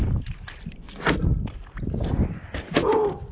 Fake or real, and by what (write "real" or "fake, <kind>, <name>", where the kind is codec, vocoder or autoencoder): real